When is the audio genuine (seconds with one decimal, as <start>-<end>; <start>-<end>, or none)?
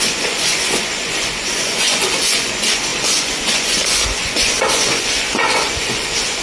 none